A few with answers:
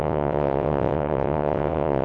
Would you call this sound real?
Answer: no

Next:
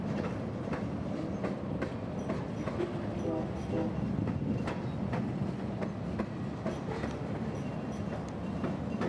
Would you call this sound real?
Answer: yes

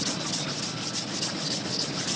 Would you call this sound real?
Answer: yes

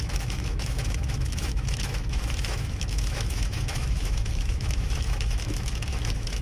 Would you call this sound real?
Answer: no